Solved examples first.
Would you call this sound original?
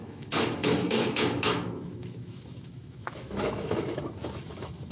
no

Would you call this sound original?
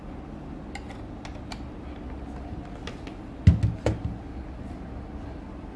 yes